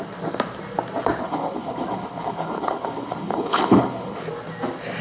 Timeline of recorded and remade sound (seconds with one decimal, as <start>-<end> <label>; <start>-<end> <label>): 0.0-1.2 recorded; 1.2-4.2 remade; 4.2-5.0 recorded